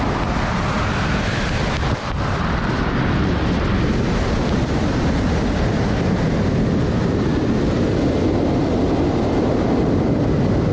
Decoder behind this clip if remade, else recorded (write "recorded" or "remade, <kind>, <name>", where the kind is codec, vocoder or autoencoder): recorded